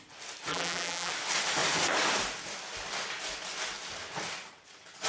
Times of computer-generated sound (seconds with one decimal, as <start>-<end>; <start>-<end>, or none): 0.5-1.1